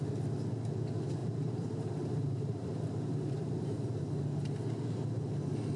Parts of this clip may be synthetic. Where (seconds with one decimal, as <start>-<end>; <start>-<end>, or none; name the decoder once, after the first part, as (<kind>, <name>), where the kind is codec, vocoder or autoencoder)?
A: 1.2-3.5 (vocoder, BigVGAN v2)